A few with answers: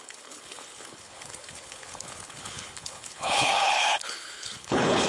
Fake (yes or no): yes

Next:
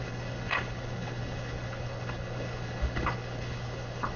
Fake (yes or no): yes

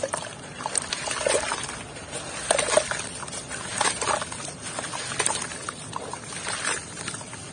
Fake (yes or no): no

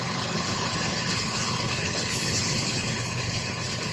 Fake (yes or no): yes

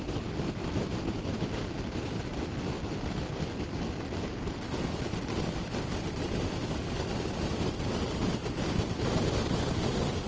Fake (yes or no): no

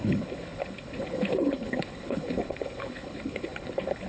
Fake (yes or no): yes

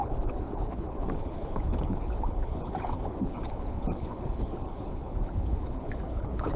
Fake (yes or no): yes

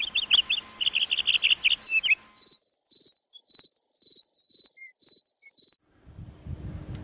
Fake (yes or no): no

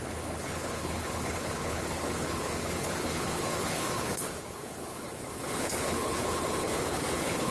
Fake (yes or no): yes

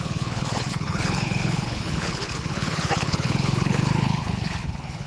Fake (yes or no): yes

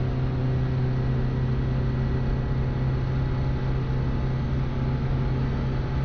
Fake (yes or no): no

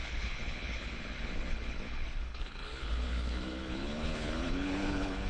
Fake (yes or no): yes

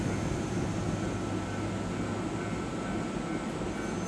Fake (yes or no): no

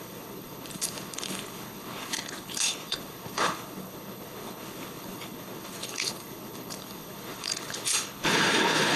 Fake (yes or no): yes